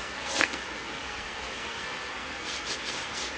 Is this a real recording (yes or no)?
no